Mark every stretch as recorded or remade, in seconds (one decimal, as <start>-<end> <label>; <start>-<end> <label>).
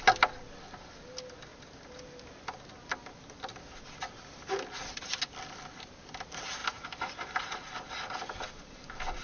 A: 0.0-9.2 recorded